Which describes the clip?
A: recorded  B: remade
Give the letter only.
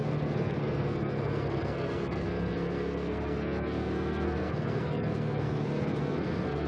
B